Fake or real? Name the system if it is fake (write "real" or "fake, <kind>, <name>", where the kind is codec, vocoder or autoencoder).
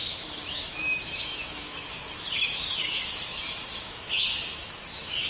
fake, autoencoder, DAC-VAE